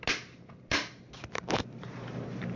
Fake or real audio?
real